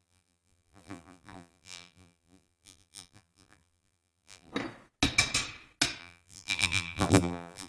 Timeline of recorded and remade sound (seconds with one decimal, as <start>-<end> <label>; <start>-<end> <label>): 0.0-4.5 remade; 4.5-6.0 recorded; 6.0-7.7 remade